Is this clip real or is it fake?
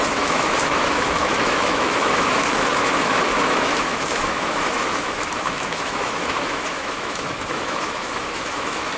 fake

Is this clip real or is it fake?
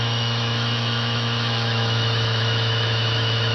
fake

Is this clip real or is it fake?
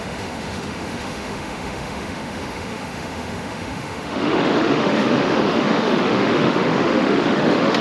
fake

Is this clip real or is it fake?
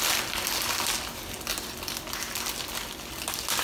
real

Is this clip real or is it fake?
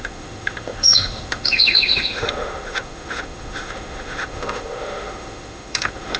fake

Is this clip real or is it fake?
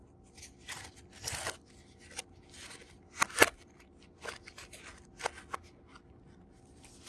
real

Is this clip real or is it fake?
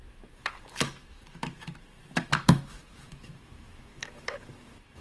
fake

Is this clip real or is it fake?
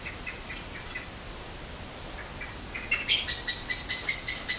real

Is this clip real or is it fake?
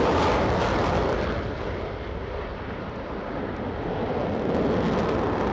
real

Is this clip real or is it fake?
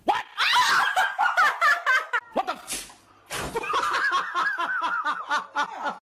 real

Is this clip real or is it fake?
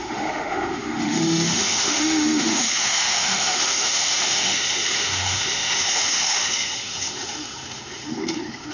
fake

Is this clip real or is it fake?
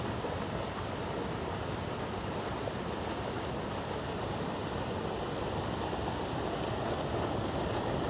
real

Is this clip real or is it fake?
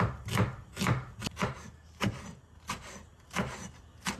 real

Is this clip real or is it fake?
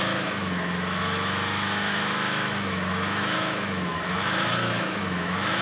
fake